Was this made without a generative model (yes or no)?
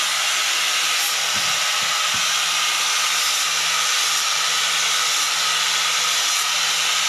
yes